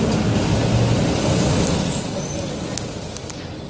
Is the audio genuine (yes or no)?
yes